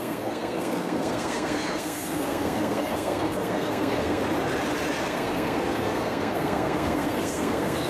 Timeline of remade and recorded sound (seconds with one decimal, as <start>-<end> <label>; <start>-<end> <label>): 0.0-4.2 remade; 4.2-5.0 recorded; 5.0-7.9 remade